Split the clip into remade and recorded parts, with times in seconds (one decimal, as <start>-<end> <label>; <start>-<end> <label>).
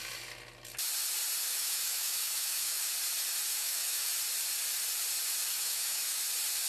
0.0-1.5 recorded; 1.5-2.9 remade; 2.9-3.5 recorded; 3.5-4.1 remade; 4.1-5.5 recorded; 5.5-6.2 remade; 6.2-6.7 recorded